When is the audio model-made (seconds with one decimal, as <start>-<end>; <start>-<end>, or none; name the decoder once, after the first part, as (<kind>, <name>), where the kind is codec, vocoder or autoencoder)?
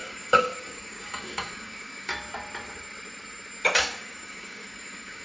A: 0.0-2.1 (codec, DAC); 3.8-5.2